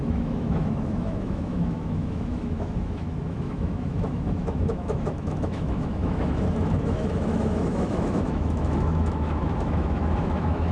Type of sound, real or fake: fake